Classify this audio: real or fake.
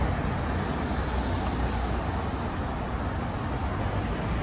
real